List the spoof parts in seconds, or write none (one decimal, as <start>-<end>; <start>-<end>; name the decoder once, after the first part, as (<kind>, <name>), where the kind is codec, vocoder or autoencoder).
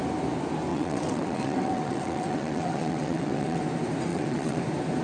0.7-3.6 (vocoder, WaveNeXt); 4.1-4.6